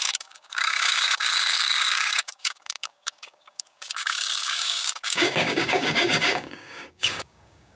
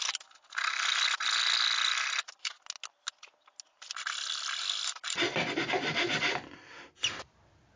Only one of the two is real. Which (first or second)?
second